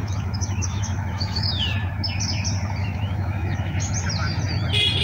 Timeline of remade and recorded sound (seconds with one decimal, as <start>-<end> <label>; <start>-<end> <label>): 0.0-1.6 remade; 1.6-2.8 recorded; 2.8-3.9 remade; 3.9-5.0 recorded